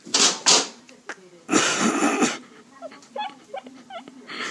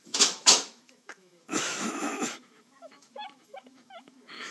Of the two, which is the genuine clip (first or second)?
first